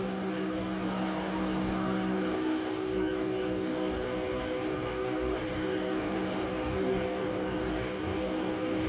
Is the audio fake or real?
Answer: fake